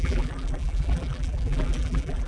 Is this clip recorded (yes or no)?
no